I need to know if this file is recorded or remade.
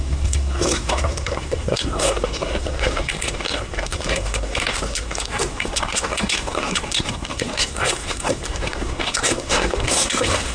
remade